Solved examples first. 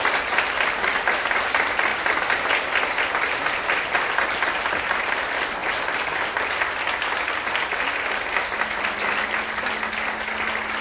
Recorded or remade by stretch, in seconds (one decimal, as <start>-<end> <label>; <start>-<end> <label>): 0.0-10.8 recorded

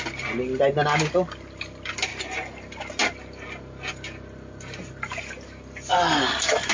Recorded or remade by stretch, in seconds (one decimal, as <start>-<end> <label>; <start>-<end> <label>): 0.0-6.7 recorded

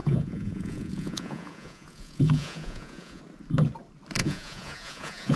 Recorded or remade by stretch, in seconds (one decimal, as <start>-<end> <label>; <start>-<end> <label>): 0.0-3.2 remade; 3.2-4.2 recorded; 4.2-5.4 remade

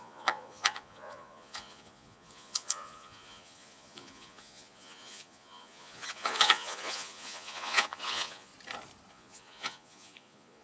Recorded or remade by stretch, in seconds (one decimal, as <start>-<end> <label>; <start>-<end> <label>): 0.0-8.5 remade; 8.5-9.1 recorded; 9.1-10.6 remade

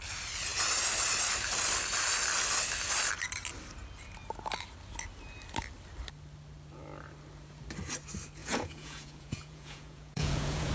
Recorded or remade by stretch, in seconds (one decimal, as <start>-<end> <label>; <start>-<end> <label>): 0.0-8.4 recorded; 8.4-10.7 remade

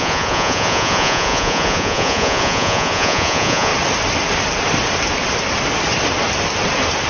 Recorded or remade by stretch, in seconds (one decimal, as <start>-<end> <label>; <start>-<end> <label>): 0.0-3.7 remade; 3.7-7.1 recorded